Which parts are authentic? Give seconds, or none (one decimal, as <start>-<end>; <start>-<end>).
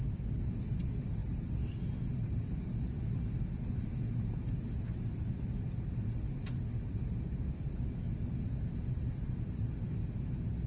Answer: 0.0-10.7